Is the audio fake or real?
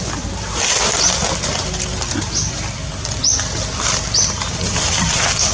real